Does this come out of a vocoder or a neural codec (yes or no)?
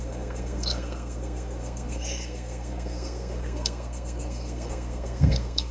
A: yes